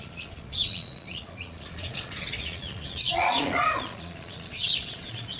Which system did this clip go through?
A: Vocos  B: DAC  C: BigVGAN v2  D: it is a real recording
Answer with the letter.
A